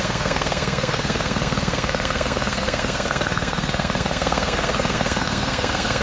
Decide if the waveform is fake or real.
fake